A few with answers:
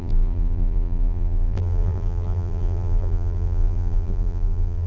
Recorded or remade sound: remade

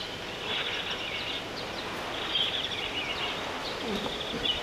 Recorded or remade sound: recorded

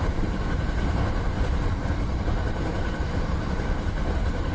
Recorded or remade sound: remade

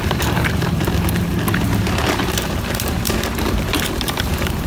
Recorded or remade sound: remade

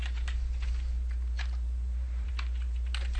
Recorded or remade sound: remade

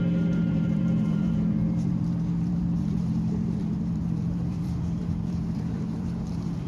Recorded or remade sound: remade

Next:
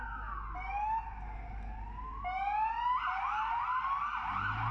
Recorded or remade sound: recorded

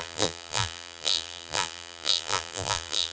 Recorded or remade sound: remade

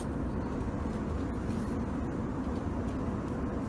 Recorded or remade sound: recorded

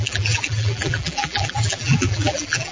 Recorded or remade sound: remade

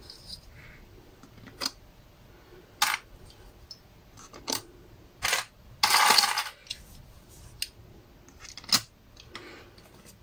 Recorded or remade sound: recorded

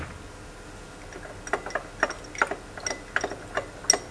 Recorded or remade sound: recorded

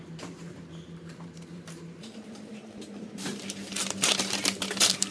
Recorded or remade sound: remade